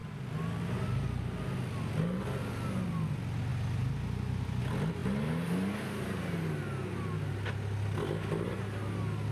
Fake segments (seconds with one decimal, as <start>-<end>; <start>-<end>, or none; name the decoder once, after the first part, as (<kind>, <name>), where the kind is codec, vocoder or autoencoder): none